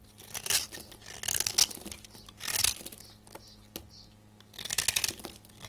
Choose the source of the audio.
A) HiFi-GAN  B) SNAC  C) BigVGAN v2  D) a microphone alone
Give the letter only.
D